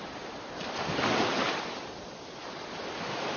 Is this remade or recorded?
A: remade